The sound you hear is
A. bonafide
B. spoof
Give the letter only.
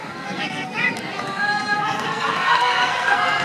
B